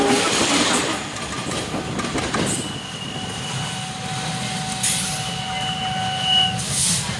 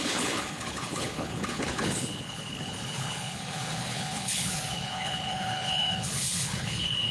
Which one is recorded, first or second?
first